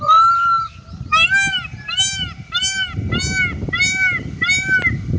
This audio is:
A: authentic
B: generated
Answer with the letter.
A